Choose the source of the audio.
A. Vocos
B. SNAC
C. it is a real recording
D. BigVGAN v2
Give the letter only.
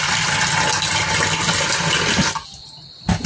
C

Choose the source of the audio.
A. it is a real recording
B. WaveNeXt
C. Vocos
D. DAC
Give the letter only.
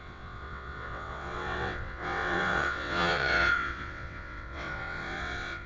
B